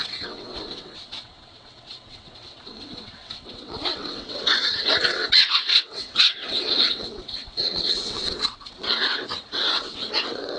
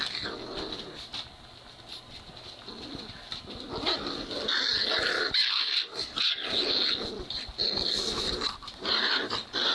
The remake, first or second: first